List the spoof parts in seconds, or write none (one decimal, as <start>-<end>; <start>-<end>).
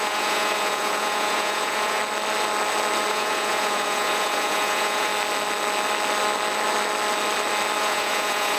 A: 0.0-2.0; 3.1-5.1; 7.8-8.6